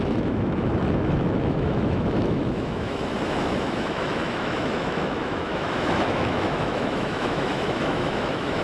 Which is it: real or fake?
fake